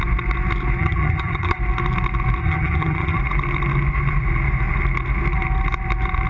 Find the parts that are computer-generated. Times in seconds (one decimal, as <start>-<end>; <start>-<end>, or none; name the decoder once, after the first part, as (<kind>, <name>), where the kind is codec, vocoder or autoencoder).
0.8-1.6 (vocoder, HiFi-GAN); 2.4-3.2